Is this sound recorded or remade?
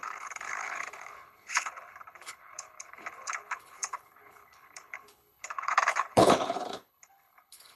remade